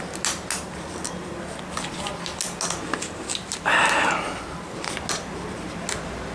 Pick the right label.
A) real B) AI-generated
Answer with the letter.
A